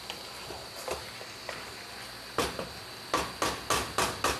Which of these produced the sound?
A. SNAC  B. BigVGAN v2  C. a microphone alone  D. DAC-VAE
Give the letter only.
C